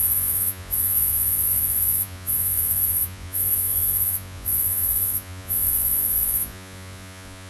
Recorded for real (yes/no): no